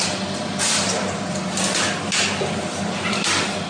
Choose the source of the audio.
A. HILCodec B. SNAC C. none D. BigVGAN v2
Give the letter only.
C